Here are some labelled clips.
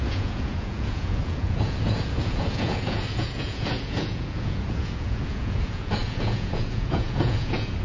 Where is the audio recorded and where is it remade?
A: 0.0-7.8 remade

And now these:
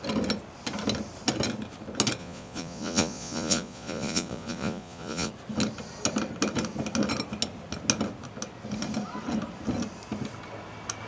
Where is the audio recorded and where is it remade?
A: 0.0-2.2 recorded; 2.2-5.3 remade; 5.3-11.1 recorded

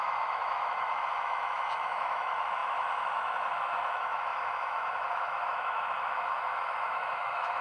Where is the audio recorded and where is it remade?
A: 0.0-7.6 remade

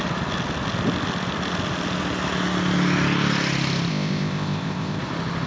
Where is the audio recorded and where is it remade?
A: 0.0-3.9 recorded; 3.9-5.0 remade; 5.0-5.5 recorded

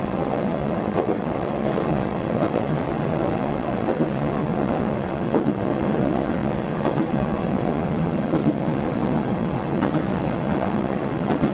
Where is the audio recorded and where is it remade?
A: 0.0-11.5 remade

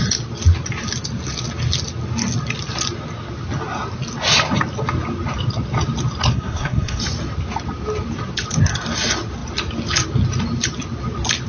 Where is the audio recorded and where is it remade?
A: 0.0-6.3 recorded; 6.3-7.0 remade; 7.0-11.5 recorded

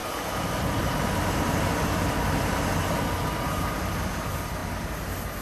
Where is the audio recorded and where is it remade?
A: 0.0-0.8 remade; 0.8-5.4 recorded